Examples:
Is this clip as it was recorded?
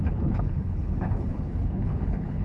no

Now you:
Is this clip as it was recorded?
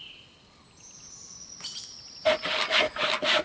yes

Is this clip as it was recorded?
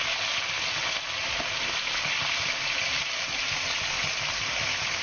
yes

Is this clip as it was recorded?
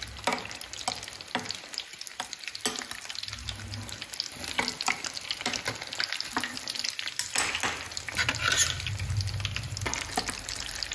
yes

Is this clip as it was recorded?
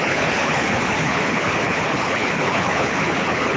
no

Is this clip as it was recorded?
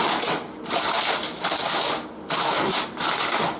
yes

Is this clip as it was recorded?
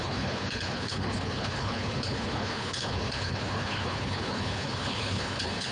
no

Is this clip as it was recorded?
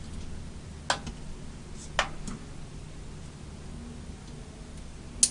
yes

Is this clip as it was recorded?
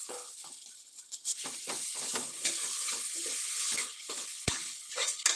no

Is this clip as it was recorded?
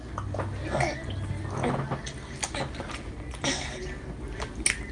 yes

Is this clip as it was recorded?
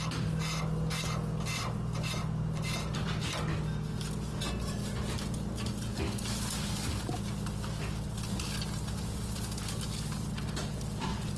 yes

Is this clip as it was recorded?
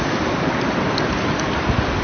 yes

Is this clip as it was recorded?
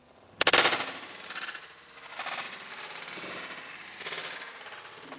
yes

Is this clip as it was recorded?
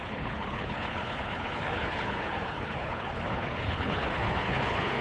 no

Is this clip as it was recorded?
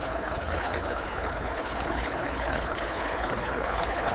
no